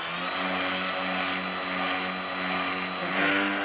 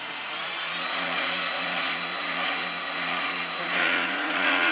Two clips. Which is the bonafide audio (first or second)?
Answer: first